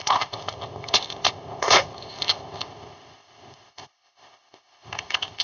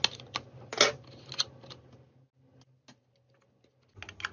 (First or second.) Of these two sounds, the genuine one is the second